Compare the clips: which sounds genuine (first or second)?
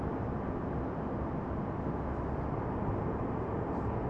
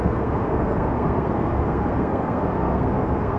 first